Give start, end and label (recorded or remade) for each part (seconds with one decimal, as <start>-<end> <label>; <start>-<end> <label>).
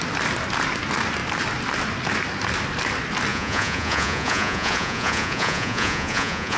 0.0-3.3 recorded; 3.3-6.6 remade